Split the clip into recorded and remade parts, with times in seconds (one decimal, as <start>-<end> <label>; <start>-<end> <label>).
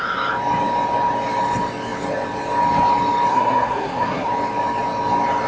0.0-3.3 recorded; 3.3-4.3 remade; 4.3-5.5 recorded